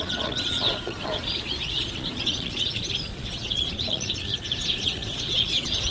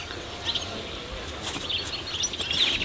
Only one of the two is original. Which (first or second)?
second